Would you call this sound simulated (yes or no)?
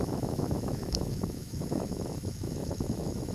yes